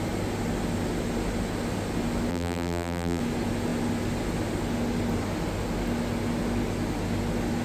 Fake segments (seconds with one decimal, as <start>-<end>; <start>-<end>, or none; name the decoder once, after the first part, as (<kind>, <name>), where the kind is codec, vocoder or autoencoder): 2.3-3.2 (vocoder, BigVGAN v2)